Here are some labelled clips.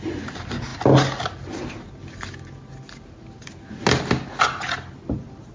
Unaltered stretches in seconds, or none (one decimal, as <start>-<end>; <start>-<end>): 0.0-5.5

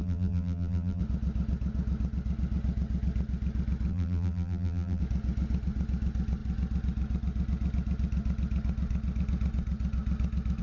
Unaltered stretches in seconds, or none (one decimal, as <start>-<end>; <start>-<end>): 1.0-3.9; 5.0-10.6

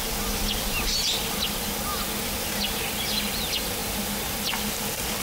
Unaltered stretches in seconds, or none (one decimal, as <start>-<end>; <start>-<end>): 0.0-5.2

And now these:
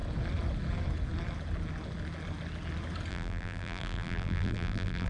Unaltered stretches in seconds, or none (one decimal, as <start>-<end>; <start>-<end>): 0.0-3.1

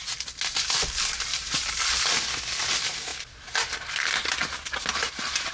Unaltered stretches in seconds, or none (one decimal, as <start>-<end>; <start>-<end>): 0.0-1.3; 1.8-5.5

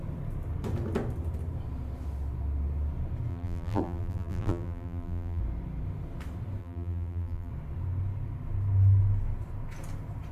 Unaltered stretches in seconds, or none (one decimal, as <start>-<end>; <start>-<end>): 0.0-3.3; 5.4-6.6; 7.5-10.3

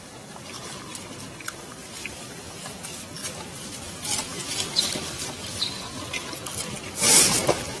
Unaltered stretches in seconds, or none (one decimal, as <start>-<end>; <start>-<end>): 0.0-7.8

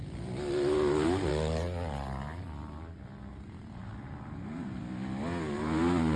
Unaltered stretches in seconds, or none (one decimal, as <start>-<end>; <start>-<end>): 0.0-3.3; 4.8-6.2